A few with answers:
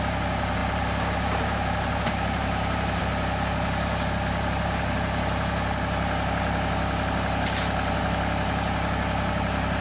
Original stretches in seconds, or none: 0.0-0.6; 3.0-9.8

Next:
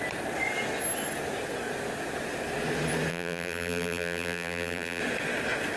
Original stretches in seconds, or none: 0.0-3.1; 5.0-5.8

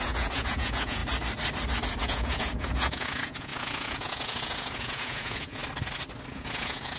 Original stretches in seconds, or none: 1.0-2.0; 5.6-6.3

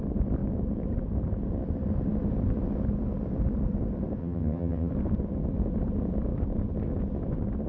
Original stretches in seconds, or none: 0.0-4.2; 4.9-7.7

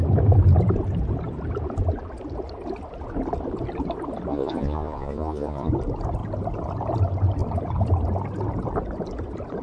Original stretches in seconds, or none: 0.0-4.3; 5.7-9.6